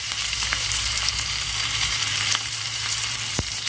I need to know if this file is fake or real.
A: fake